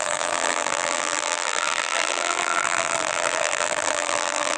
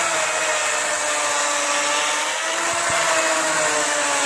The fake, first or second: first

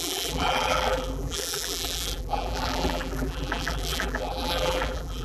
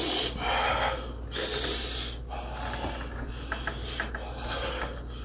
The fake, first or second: first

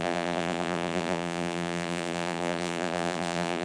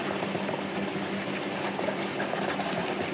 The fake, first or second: first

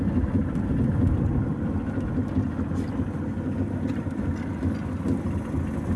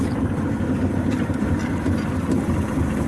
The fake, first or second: second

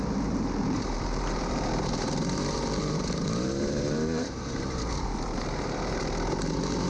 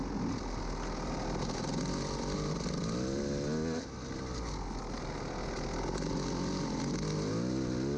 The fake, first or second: first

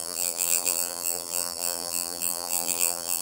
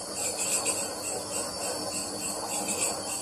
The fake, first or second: first